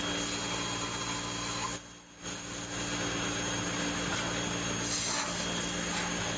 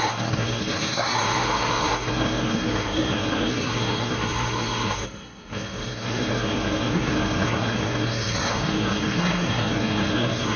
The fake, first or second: second